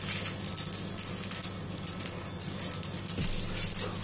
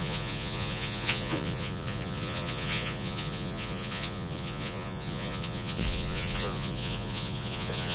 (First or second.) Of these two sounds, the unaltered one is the first